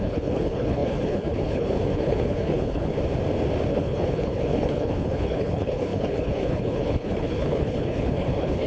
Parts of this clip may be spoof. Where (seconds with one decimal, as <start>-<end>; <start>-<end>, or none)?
0.0-2.9; 3.7-8.7